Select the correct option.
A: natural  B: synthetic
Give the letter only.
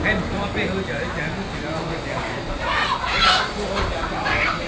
A